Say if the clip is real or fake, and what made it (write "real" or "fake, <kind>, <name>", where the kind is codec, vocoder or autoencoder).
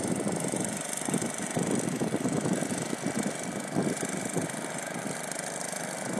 real